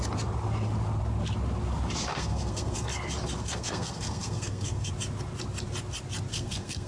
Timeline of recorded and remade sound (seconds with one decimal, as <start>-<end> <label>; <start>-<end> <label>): 0.0-2.1 recorded; 2.1-2.9 remade; 2.9-3.4 recorded; 3.4-4.9 remade; 4.9-6.3 recorded; 6.3-6.9 remade